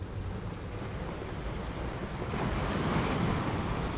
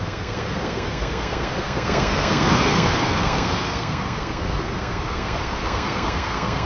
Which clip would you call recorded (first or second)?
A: first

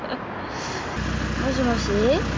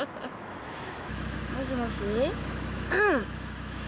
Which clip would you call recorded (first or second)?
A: first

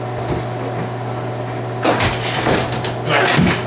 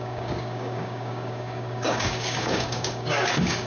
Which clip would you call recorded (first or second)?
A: first